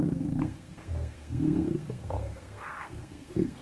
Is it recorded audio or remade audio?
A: remade